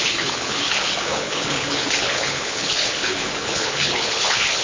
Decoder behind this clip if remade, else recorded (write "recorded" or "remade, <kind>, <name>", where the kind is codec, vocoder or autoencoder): remade, codec, HILCodec